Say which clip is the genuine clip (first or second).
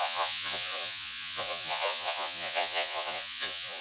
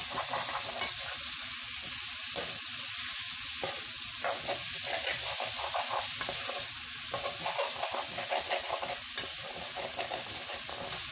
second